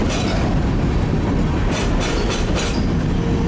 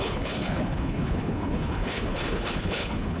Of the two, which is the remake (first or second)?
second